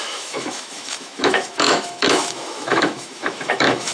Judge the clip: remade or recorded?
remade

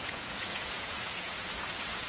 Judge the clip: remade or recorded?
remade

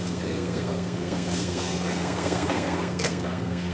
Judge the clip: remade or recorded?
remade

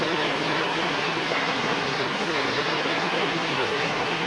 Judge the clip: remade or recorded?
remade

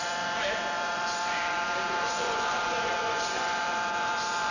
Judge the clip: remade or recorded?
remade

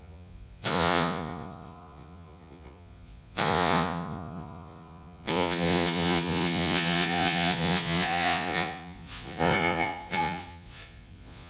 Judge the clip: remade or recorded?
remade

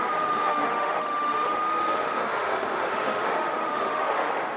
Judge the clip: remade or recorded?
remade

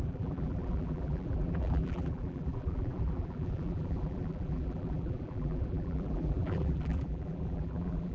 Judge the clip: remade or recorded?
remade